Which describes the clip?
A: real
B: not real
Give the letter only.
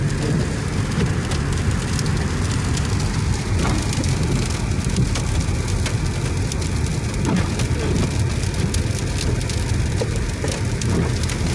A